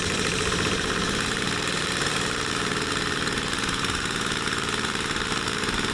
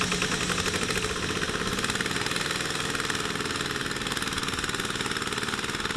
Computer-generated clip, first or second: first